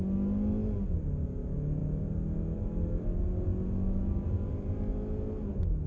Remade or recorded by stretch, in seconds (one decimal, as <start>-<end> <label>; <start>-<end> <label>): 0.0-5.9 recorded